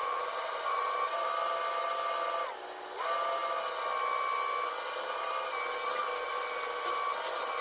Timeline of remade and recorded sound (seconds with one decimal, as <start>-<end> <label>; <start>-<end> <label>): 0.0-1.3 remade; 1.3-7.6 recorded